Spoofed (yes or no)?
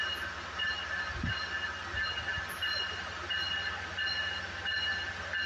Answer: no